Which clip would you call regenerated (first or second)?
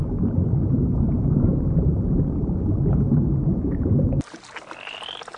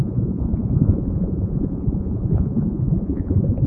second